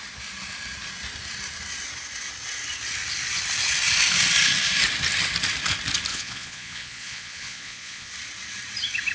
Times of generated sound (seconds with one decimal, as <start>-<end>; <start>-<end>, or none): 6.1-8.1